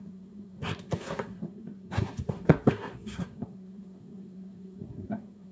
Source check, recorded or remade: remade